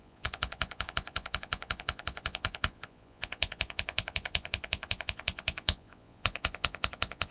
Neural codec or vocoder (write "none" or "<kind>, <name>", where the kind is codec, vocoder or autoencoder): vocoder, Vocos